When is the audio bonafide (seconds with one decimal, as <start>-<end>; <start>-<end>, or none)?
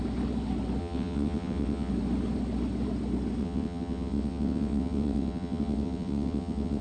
0.0-0.8; 1.9-3.4